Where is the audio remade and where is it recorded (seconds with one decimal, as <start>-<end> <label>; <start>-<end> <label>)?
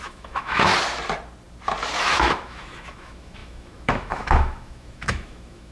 0.0-0.7 remade; 0.7-2.0 recorded; 2.0-5.7 remade